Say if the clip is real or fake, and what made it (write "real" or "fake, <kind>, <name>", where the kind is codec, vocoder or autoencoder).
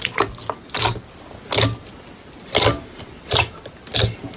real